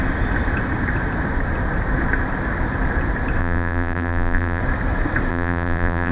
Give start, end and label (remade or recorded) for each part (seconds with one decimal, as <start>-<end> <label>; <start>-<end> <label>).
0.0-3.4 recorded; 3.4-4.6 remade; 4.6-5.3 recorded; 5.3-6.1 remade